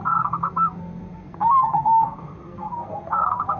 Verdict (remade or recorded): remade